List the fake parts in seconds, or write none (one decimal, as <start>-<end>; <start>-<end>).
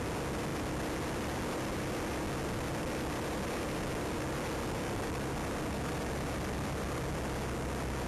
none